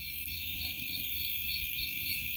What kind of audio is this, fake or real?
fake